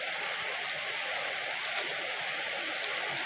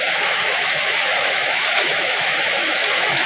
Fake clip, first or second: second